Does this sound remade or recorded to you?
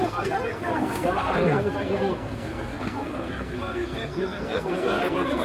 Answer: remade